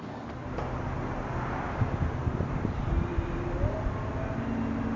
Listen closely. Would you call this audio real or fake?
real